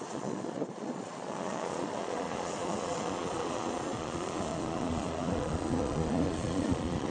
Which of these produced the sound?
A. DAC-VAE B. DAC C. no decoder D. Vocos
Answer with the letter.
D